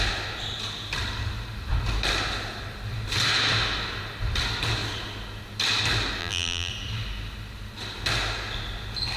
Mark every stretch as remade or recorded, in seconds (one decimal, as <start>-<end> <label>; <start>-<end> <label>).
0.0-6.2 recorded; 6.2-6.7 remade; 6.7-9.2 recorded